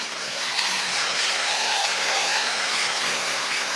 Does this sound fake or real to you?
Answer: fake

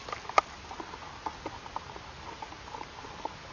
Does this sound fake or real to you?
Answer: real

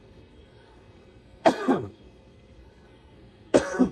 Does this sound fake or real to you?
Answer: fake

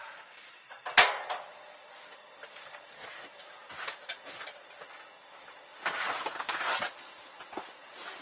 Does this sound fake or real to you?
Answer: real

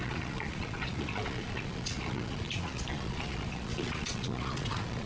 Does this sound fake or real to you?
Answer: fake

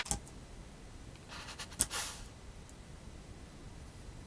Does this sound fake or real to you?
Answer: real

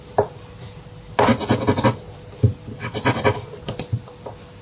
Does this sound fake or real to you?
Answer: real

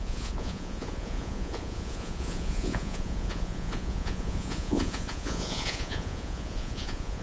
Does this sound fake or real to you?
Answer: fake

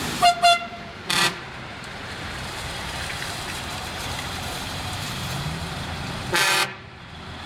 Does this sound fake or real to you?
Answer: fake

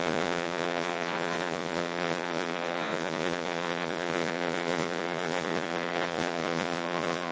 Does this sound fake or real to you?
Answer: fake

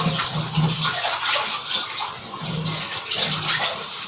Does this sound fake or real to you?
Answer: real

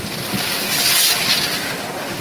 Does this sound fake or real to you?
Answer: real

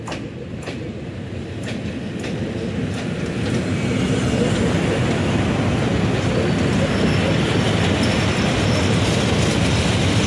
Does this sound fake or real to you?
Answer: real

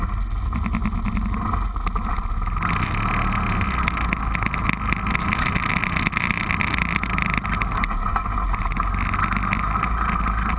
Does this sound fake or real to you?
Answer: real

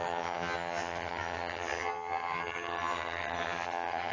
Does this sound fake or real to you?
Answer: fake